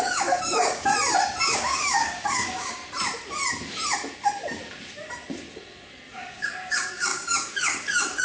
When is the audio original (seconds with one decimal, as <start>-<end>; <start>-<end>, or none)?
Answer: 0.9-1.4; 2.8-6.2